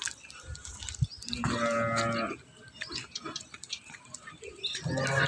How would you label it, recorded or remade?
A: recorded